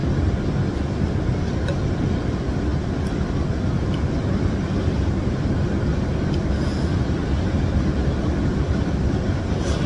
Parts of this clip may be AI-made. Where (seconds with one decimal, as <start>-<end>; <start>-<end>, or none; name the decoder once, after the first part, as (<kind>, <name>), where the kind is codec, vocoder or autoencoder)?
none